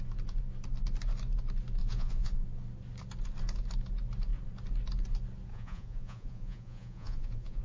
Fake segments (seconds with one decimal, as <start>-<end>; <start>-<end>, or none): 1.8-2.4; 5.5-7.6